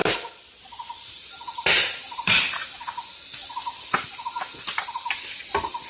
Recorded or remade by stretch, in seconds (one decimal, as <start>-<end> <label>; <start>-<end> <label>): 0.0-5.9 recorded